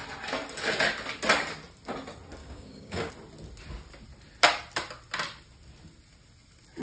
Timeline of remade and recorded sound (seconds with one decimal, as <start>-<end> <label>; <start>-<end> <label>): 0.0-2.4 recorded; 2.4-3.1 remade; 3.1-6.8 recorded